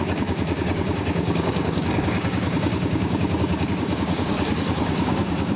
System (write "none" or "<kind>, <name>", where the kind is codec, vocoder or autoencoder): codec, DAC